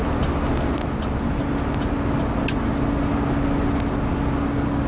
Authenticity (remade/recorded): recorded